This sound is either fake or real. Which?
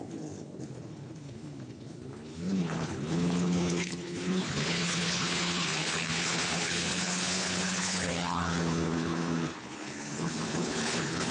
fake